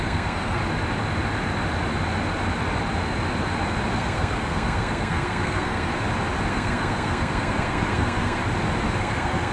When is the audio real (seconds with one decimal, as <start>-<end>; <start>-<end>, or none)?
0.6-3.9; 5.9-6.5; 8.4-9.0